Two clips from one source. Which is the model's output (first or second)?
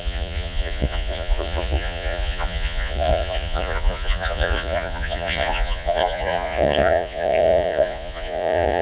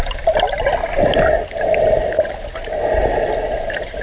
first